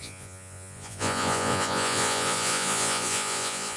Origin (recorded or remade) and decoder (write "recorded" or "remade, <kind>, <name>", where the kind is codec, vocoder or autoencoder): remade, vocoder, Vocos